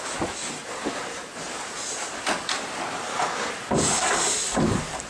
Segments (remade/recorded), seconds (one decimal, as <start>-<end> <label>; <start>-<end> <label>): 0.0-5.1 recorded